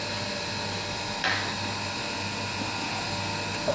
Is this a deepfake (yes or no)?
no